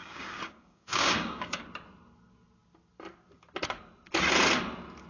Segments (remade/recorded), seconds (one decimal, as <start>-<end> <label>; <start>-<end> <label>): 0.0-1.6 remade; 1.6-5.1 recorded